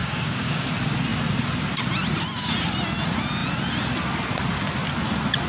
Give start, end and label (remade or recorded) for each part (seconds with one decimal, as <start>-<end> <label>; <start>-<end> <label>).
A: 0.0-0.7 remade; 0.7-5.5 recorded